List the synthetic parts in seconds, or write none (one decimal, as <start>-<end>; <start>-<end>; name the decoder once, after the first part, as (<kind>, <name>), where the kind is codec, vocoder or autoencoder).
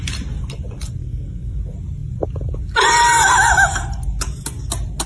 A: 1.0-1.6 (codec, SNAC)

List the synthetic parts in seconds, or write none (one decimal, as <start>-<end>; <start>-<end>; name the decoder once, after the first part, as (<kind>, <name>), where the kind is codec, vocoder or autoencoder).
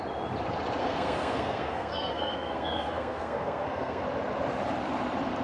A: 0.8-4.0 (codec, SNAC)